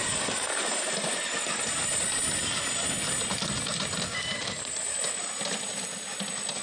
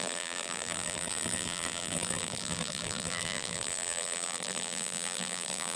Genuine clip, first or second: first